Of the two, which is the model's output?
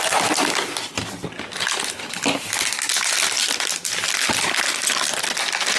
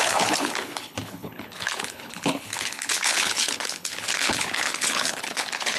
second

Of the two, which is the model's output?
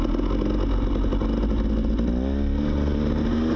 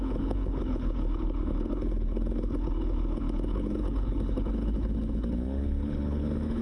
second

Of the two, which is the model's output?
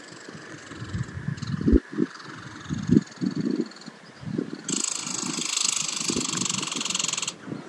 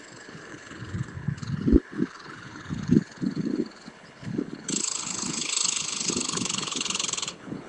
second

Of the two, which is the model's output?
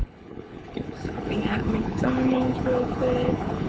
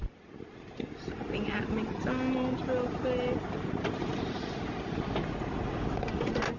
first